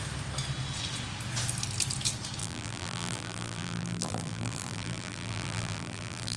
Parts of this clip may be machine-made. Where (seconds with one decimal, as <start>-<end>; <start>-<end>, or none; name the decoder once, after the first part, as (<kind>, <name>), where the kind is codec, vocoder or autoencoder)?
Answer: 2.4-6.4 (vocoder, BigVGAN v2)